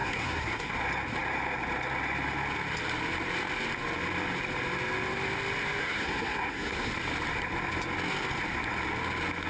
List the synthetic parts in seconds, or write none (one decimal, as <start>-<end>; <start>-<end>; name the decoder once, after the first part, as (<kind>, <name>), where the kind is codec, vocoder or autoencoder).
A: 0.0-0.7 (codec, SNAC); 5.8-6.9